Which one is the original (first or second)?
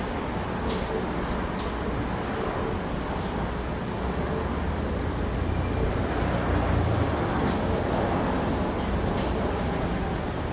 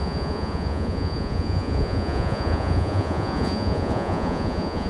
first